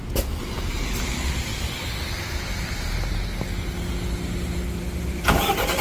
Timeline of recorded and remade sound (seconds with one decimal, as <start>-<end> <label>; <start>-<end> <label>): 0.0-1.5 remade; 1.5-5.0 recorded; 5.0-5.8 remade